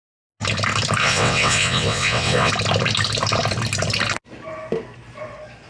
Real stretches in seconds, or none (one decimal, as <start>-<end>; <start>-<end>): 0.0-1.0; 2.5-5.7